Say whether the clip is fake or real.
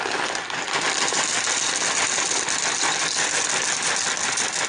real